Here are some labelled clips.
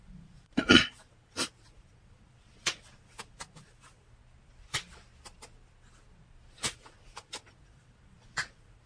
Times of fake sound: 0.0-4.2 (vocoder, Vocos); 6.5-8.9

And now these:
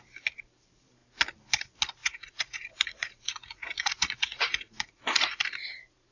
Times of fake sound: 2.0-5.4 (vocoder, Vocos)

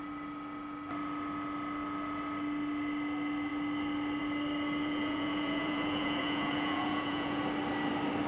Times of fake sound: 4.8-7.4 (vocoder, Vocos)

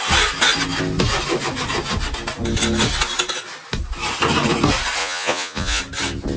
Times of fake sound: 5.0-5.8 (vocoder, Vocos)